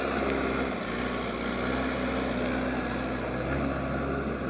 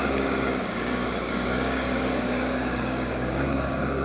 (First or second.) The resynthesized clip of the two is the second